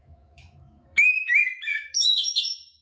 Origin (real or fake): fake